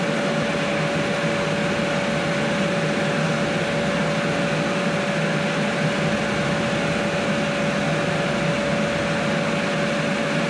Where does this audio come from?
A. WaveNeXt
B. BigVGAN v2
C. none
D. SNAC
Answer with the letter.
C